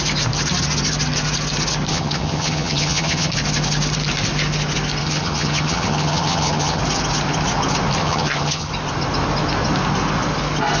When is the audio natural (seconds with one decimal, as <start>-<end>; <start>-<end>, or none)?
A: 0.0-1.9; 3.3-5.0; 6.8-8.0; 8.7-10.8